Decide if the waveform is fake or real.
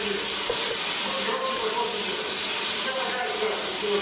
real